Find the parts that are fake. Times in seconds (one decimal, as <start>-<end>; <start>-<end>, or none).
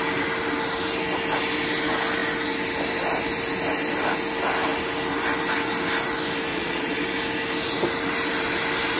6.5-7.0